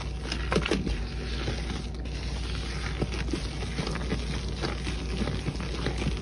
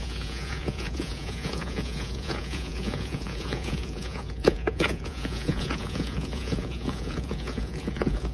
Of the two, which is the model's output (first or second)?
second